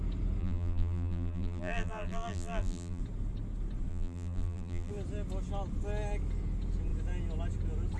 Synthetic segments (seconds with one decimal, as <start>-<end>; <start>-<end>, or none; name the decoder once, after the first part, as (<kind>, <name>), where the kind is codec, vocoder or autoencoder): 0.4-3.0 (vocoder, BigVGAN v2); 3.9-4.9